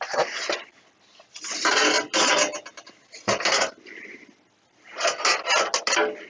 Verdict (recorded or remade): recorded